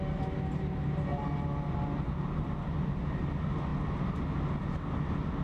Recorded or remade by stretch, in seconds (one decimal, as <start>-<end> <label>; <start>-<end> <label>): 0.0-5.4 recorded

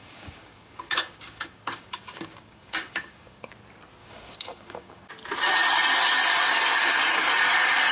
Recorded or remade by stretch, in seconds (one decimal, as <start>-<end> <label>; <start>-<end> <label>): 0.0-3.5 remade; 3.5-4.0 recorded; 4.0-5.1 remade; 5.1-7.9 recorded

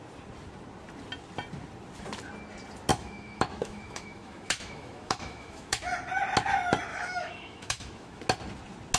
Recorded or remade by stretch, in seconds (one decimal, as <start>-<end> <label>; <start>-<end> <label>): 0.0-2.9 recorded; 2.9-5.8 remade; 5.8-6.9 recorded; 6.9-8.2 remade; 8.2-9.0 recorded